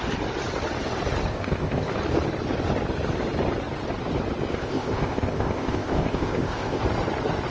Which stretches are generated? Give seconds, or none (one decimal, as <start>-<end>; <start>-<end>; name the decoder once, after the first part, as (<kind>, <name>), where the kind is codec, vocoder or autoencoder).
1.3-1.9 (codec, ZipCodec); 4.5-6.8